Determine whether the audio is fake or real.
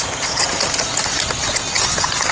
real